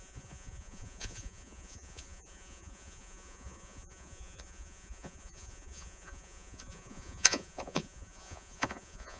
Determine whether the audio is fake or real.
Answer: fake